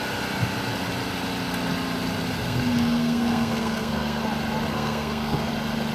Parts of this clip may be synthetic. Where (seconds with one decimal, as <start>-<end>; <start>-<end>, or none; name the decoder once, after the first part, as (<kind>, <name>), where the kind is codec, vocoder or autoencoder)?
2.4-4.2 (codec, SNAC); 4.7-5.5